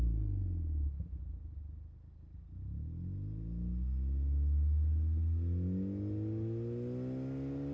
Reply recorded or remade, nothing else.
recorded